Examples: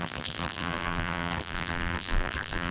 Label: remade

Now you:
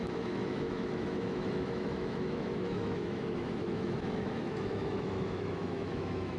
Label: remade